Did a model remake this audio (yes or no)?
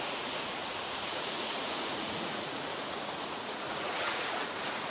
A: yes